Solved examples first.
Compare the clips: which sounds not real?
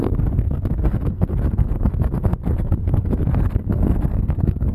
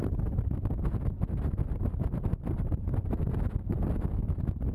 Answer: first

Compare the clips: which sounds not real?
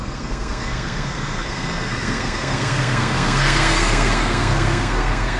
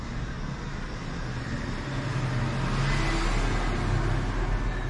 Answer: first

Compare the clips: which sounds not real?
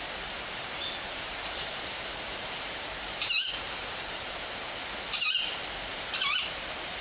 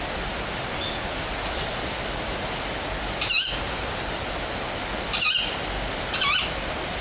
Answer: first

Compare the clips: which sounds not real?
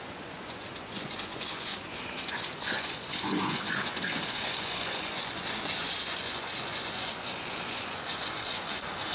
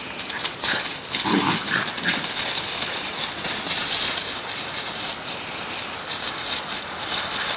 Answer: first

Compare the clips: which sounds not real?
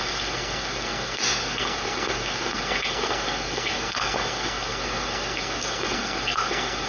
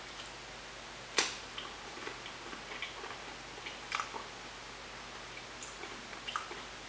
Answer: first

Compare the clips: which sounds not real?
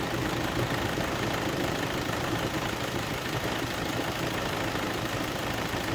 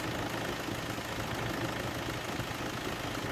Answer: first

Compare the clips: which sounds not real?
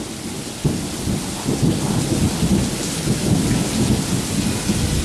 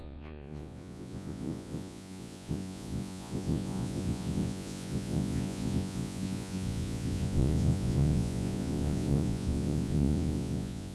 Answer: second